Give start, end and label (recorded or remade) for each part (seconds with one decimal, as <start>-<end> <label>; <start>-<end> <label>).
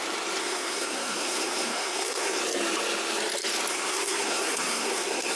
0.0-0.4 recorded; 0.4-2.4 remade; 2.4-3.7 recorded; 3.7-5.4 remade